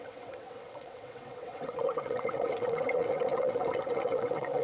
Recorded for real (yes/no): no